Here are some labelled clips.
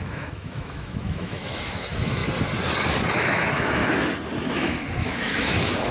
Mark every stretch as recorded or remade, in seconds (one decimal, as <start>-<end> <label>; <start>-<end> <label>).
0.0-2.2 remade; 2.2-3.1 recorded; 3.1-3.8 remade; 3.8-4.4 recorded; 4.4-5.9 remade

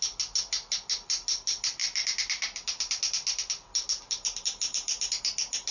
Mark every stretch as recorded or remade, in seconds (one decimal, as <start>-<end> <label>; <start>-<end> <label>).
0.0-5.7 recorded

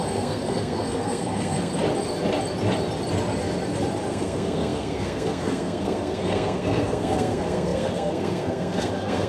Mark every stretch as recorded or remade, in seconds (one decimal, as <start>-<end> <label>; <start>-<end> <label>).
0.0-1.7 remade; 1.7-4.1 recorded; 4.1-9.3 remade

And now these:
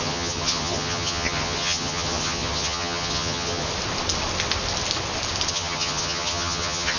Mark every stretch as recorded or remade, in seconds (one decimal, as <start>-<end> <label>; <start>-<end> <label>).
0.0-3.7 remade; 3.7-5.5 recorded; 5.5-7.0 remade

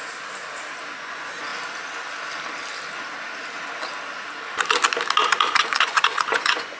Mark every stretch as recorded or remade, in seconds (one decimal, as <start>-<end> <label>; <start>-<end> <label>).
0.0-1.0 recorded; 1.0-1.5 remade; 1.5-5.6 recorded; 5.6-6.8 remade